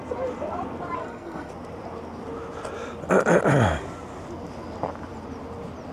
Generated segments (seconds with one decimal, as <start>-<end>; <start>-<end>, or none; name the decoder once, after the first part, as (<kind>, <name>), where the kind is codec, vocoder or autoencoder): 1.0-1.5 (codec, SNAC)

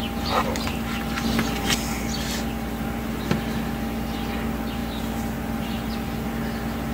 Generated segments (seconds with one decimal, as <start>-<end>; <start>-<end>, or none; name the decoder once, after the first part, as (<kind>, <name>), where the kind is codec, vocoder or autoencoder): none

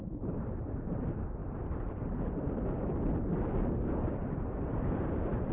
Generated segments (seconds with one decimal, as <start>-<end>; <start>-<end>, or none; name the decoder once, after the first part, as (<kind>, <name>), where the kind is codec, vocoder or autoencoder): none

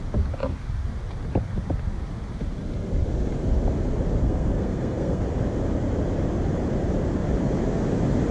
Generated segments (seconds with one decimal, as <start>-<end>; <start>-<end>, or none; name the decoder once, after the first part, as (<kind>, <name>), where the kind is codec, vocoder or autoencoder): 4.2-5.2 (codec, SNAC)

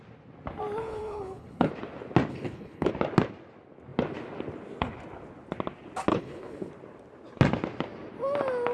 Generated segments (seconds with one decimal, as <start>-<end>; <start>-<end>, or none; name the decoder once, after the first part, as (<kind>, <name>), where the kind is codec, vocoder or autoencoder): 0.8-1.7 (codec, HILCodec); 2.3-2.9; 6.1-6.7

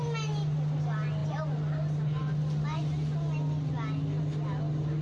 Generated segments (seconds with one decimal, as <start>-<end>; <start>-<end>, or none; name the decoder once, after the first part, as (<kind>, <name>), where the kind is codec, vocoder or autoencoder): none

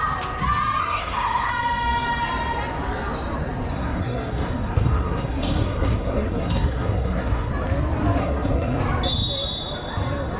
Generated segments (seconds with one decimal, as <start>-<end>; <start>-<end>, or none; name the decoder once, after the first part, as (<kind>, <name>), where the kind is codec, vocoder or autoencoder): 0.8-1.5 (codec, SNAC); 3.7-7.5; 8.2-8.8

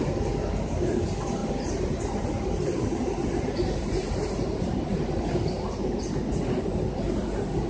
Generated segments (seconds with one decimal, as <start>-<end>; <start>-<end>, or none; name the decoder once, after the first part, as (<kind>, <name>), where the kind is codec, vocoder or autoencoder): 1.4-6.0 (vocoder, BigVGAN v2)